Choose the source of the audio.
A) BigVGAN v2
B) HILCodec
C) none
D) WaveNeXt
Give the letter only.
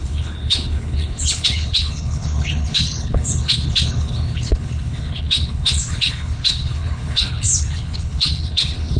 B